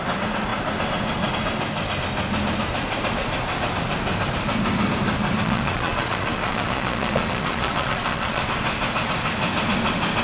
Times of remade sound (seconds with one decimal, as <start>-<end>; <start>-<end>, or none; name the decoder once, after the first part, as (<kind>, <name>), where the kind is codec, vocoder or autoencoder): 5.4-8.4 (vocoder, Vocos)